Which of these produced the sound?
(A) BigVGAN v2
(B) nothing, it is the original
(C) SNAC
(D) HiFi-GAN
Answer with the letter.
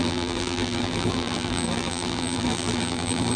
A